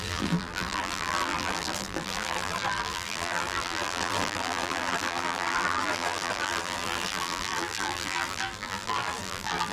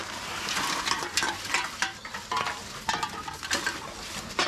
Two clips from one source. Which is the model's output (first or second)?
first